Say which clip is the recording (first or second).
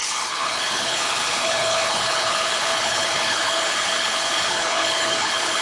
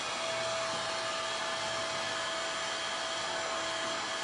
second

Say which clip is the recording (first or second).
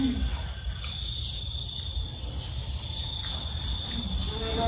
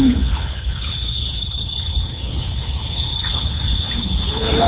first